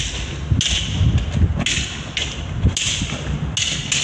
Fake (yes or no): no